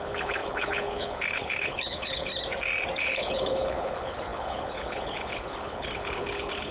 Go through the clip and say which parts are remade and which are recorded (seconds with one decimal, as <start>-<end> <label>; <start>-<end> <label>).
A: 0.0-2.3 remade; 2.3-3.0 recorded; 3.0-6.7 remade

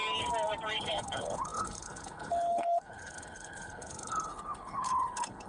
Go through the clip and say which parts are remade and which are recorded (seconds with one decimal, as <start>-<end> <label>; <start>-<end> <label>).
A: 0.0-0.8 recorded; 0.8-5.5 remade

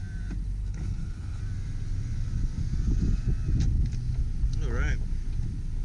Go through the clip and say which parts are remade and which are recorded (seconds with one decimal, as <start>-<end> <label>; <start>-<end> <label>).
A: 0.0-0.6 recorded; 0.6-1.4 remade; 1.4-5.8 recorded

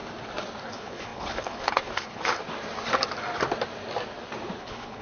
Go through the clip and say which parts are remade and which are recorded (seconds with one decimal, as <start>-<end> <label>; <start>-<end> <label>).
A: 0.0-0.6 recorded; 0.6-2.4 remade; 2.4-4.6 recorded; 4.6-5.0 remade

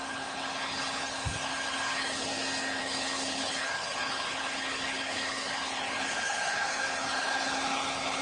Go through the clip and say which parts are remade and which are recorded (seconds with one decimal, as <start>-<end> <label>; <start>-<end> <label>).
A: 0.0-2.3 remade; 2.3-2.8 recorded; 2.8-8.2 remade